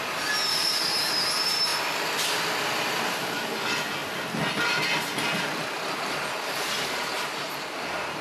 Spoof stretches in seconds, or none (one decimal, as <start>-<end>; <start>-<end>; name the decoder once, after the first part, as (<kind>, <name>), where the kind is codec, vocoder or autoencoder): 0.5-1.1 (vocoder, BigVGAN v2)